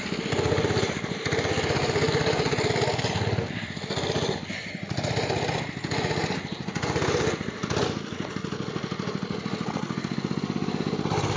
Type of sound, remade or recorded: recorded